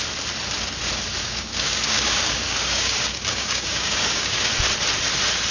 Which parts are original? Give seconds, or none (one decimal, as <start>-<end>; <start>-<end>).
0.0-1.2; 4.5-5.5